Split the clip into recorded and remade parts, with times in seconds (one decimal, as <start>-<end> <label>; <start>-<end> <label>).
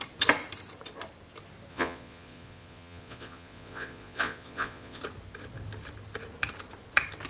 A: 0.0-1.7 recorded; 1.7-5.0 remade; 5.0-7.3 recorded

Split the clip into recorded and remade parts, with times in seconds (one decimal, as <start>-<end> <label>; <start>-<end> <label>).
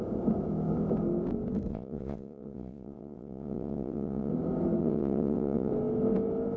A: 0.0-1.7 recorded; 1.7-4.3 remade; 4.3-4.8 recorded; 4.8-5.7 remade; 5.7-6.6 recorded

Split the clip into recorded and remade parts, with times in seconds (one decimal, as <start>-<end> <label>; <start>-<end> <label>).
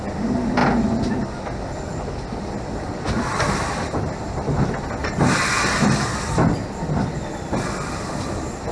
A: 0.0-3.3 recorded; 3.3-4.2 remade; 4.2-5.0 recorded; 5.0-6.3 remade; 6.3-8.7 recorded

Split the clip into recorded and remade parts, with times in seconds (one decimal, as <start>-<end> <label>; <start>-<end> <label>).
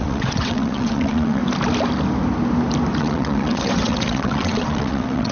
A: 0.0-1.4 remade; 1.4-3.0 recorded; 3.0-5.3 remade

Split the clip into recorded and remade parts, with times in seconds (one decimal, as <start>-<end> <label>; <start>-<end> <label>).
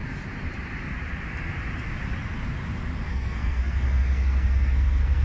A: 0.0-3.1 recorded; 3.1-5.2 remade